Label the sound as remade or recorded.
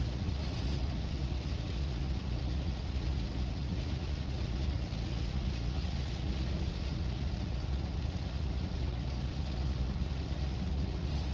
remade